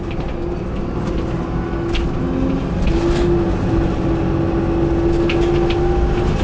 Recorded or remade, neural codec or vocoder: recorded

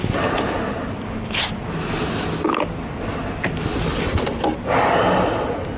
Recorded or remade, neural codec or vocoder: recorded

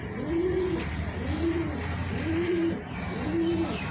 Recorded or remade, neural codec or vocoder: recorded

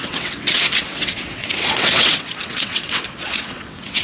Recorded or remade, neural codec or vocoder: remade, vocoder, WaveNeXt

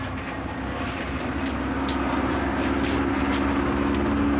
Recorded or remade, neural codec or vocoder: recorded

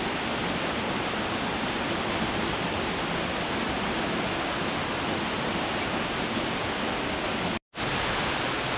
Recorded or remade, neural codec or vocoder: recorded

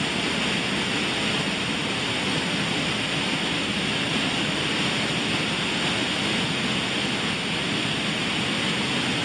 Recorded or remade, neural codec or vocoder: recorded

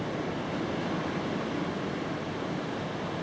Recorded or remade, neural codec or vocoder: recorded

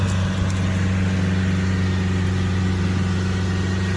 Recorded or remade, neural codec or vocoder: recorded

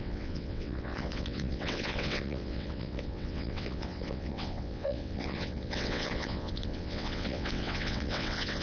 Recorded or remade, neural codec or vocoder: remade, vocoder, WaveNeXt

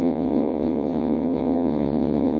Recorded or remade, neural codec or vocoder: remade, vocoder, WaveNeXt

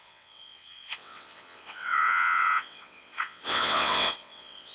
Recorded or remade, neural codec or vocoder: remade, vocoder, WaveNeXt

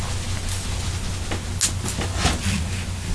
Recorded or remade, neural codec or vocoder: recorded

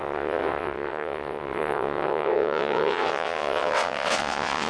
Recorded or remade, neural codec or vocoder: remade, vocoder, WaveNeXt